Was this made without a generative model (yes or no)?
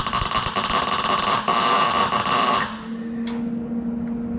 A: yes